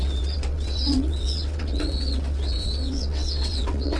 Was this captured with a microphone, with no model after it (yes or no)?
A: no